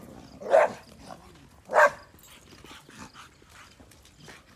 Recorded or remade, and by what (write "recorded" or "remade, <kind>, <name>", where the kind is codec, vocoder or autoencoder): recorded